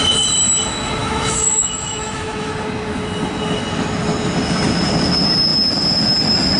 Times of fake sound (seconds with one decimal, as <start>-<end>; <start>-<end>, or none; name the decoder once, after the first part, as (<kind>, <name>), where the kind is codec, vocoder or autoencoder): 1.0-2.5 (autoencoder, DAC-VAE)